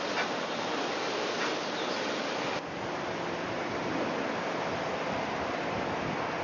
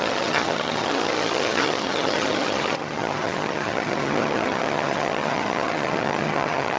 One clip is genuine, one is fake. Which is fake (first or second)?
second